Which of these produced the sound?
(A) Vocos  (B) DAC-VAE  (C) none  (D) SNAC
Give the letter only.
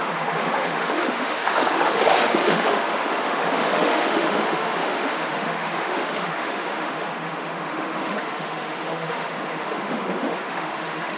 B